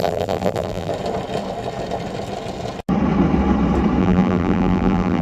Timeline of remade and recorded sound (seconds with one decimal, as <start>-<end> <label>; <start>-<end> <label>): 0.0-0.9 remade; 0.9-4.0 recorded; 4.0-5.2 remade